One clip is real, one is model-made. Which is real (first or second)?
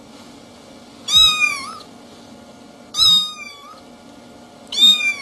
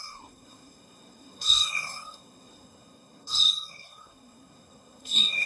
first